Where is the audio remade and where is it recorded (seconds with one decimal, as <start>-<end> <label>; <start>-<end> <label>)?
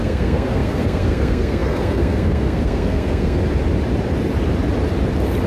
0.0-3.4 remade; 3.4-5.5 recorded